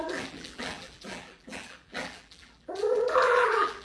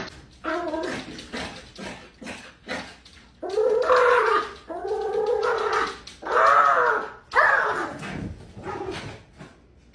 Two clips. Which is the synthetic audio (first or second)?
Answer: first